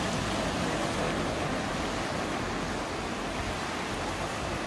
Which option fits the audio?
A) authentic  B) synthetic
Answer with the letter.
A